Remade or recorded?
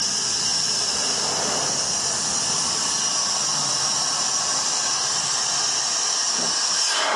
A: recorded